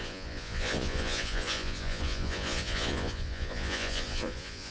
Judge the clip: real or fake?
fake